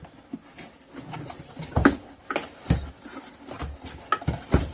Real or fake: real